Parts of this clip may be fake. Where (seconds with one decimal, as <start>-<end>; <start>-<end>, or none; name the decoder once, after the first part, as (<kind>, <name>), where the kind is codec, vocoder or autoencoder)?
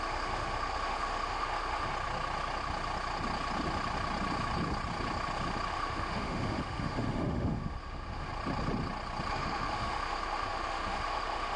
0.0-1.9 (autoencoder, DAC-VAE); 5.7-8.3; 9.3-11.6